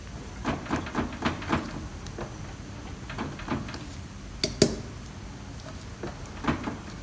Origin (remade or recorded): recorded